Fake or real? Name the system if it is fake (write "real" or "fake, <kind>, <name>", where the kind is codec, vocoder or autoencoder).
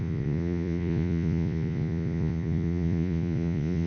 fake, vocoder, Vocos